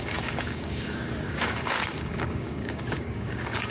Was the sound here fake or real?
fake